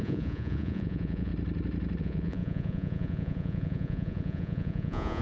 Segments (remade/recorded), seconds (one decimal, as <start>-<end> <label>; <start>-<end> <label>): 0.0-1.3 remade; 1.3-2.0 recorded; 2.0-5.2 remade